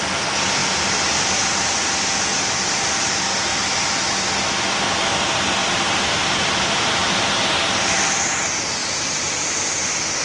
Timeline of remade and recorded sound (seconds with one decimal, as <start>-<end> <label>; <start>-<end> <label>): 0.0-3.5 recorded; 3.5-4.1 remade; 4.1-5.6 recorded; 5.6-7.5 remade; 7.5-8.8 recorded; 8.8-9.4 remade; 9.4-10.2 recorded